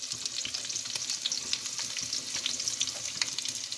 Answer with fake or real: real